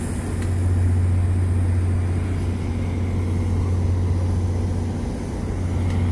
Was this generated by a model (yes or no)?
no